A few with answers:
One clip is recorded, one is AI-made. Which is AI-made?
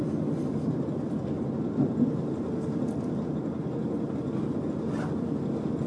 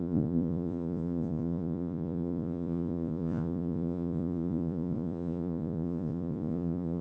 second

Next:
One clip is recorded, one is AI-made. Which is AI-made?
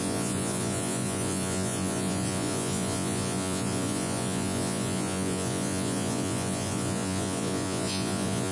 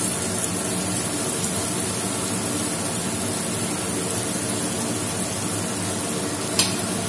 first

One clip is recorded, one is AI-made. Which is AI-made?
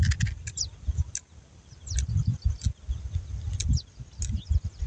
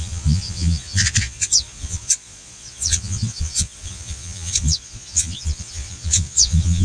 second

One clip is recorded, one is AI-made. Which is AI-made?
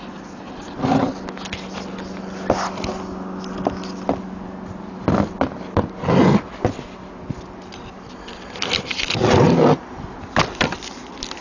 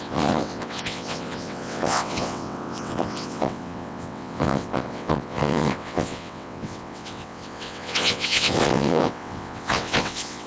second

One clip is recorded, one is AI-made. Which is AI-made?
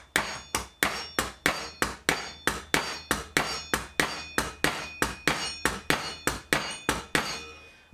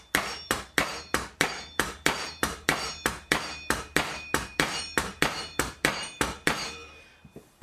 second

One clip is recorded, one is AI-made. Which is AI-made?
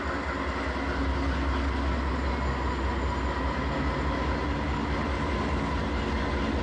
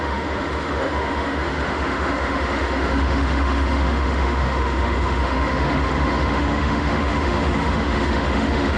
second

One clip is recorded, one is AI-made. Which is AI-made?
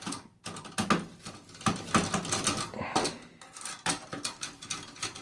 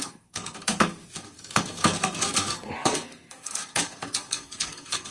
second